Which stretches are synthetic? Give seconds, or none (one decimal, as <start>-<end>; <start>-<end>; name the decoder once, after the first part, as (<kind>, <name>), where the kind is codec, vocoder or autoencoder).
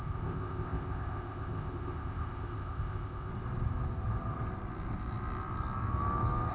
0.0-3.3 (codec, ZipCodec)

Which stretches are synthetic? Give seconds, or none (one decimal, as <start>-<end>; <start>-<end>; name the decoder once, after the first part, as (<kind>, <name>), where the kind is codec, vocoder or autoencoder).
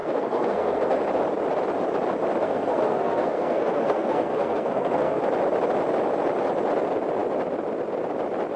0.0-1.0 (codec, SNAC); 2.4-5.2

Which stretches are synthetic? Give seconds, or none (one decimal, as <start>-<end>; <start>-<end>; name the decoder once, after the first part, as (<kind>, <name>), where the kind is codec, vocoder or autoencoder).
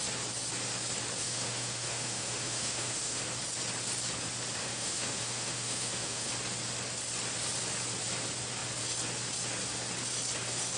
1.2-3.2 (autoencoder, DAC-VAE); 4.6-6.3